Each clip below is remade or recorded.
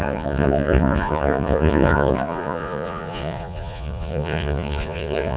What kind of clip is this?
remade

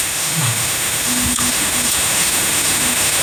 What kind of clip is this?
remade